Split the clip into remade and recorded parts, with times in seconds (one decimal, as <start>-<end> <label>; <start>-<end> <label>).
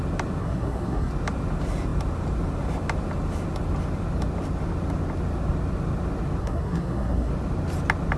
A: 0.0-0.4 recorded; 0.4-1.1 remade; 1.1-6.4 recorded; 6.4-7.3 remade; 7.3-8.2 recorded